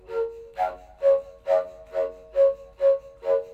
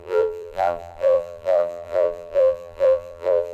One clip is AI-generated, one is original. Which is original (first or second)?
first